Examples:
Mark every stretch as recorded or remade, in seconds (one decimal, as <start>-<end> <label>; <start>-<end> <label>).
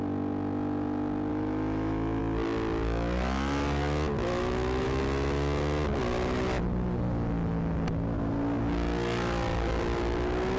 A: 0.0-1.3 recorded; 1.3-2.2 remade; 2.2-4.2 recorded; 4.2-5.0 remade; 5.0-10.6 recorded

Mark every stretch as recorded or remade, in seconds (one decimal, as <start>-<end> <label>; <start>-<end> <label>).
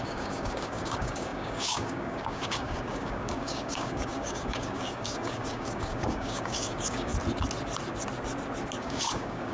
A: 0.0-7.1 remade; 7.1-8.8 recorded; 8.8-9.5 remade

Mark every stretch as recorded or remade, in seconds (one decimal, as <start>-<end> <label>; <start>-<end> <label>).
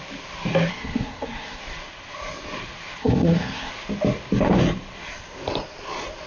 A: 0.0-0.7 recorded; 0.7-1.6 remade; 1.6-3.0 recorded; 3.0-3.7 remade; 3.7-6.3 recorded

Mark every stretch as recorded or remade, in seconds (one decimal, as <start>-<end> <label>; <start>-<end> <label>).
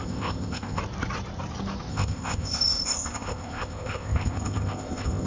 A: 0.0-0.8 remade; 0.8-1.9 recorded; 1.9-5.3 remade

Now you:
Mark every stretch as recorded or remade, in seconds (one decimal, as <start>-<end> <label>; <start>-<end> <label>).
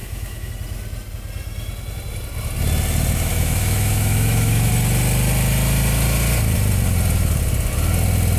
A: 0.0-0.5 remade; 0.5-3.3 recorded; 3.3-4.7 remade; 4.7-8.4 recorded